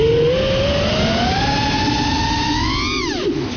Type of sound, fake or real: real